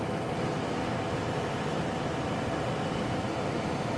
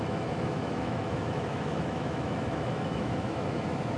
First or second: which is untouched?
first